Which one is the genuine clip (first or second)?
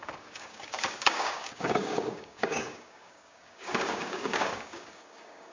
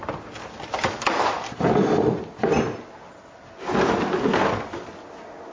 second